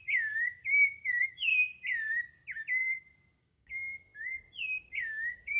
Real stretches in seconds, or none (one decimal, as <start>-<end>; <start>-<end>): 1.5-3.4; 4.1-4.8